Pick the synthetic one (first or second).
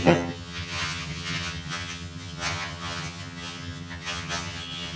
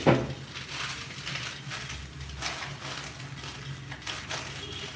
first